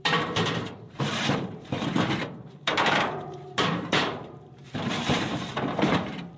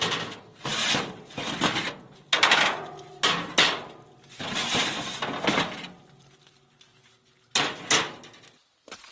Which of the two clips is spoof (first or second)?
first